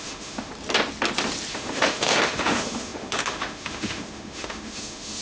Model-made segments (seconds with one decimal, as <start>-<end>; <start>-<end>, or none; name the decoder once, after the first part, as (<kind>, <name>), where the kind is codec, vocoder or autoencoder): 0.0-0.5 (autoencoder, DAC-VAE); 1.5-5.2